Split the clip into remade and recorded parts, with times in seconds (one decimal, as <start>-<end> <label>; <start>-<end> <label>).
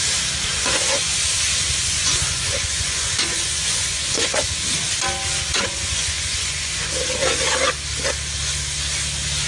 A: 0.0-0.5 recorded; 0.5-1.2 remade; 1.2-1.8 recorded; 1.8-4.5 remade; 4.5-5.5 recorded; 5.5-6.9 remade; 6.9-9.5 recorded